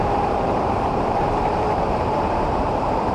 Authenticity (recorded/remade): remade